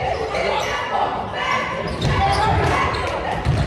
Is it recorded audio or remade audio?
recorded